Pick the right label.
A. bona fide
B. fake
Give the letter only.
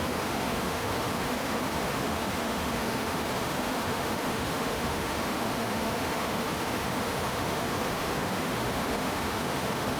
B